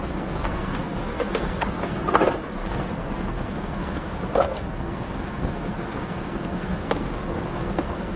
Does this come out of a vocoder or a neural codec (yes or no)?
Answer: yes